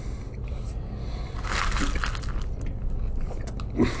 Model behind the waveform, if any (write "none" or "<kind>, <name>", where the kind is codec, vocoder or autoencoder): none